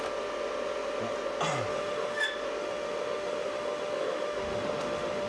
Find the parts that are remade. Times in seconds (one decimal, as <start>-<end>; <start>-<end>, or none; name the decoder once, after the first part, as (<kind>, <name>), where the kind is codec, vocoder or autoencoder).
1.7-2.2 (autoencoder, DAC-VAE); 2.6-5.3